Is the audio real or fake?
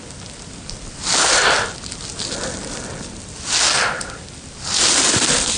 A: real